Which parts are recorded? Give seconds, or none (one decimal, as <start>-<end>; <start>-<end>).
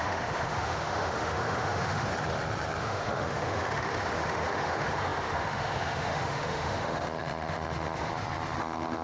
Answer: 2.1-2.8; 8.1-8.6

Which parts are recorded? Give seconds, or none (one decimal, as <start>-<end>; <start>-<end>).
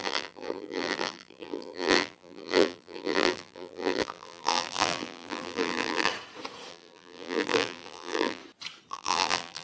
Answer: 6.1-6.7; 8.4-8.9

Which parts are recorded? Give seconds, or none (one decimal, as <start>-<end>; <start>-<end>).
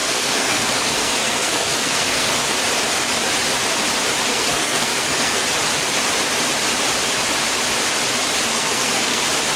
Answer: 2.5-4.3; 5.4-8.5; 9.2-9.6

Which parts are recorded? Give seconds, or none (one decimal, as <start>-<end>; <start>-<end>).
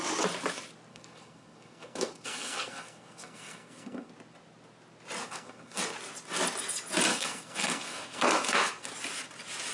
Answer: 0.0-0.9; 4.1-5.2; 5.8-7.1; 8.9-9.7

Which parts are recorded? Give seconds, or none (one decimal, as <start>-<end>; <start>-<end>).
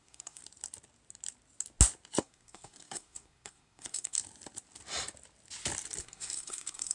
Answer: 0.4-2.2; 4.2-6.0